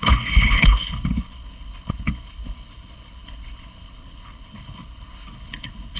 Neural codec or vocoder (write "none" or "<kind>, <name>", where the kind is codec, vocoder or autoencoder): codec, HILCodec